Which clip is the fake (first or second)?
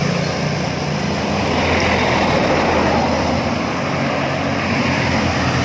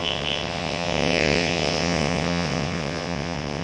second